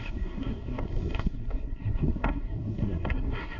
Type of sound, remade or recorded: remade